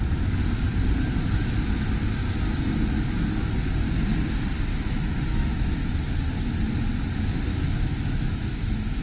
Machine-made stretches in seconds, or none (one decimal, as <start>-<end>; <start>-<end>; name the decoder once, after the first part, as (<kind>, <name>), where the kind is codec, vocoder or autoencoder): 4.7-5.9 (autoencoder, DAC-VAE); 7.5-9.0